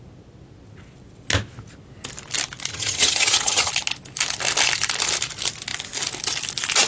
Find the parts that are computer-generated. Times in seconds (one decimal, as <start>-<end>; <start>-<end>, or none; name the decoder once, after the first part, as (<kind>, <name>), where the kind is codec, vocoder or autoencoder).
2.7-3.7 (vocoder, HiFi-GAN)